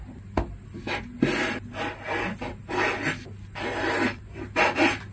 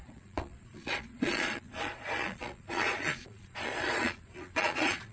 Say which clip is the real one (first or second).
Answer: first